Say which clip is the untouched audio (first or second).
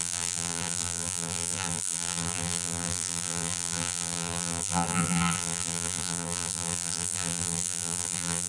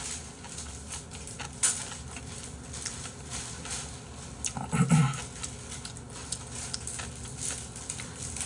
second